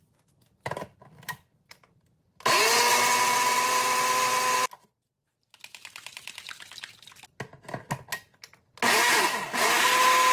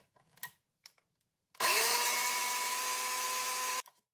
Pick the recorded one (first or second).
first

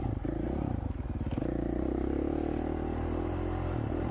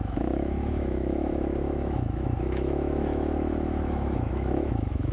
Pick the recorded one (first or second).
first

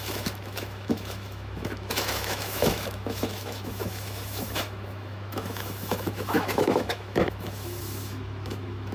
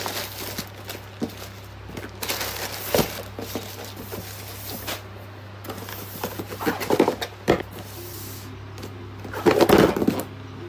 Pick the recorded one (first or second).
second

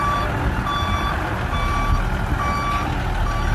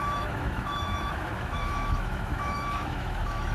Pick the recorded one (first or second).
first